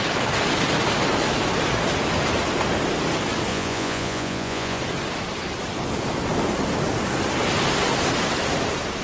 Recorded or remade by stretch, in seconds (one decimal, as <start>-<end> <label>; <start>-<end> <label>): 0.0-3.5 recorded; 3.5-4.8 remade; 4.8-9.0 recorded